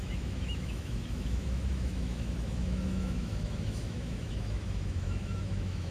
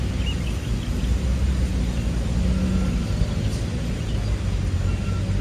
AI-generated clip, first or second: first